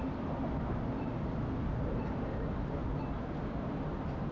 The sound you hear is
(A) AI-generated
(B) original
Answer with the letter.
B